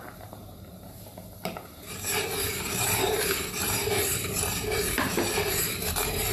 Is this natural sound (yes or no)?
no